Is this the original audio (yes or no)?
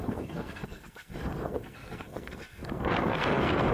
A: no